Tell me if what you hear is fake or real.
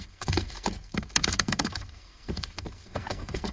fake